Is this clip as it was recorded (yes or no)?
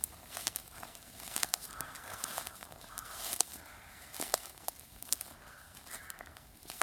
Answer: no